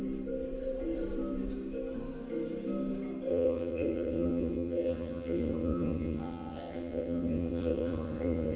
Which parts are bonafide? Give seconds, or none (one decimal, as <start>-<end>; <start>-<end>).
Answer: 0.0-3.3